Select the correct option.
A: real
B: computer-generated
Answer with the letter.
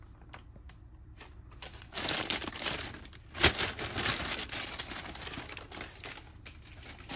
A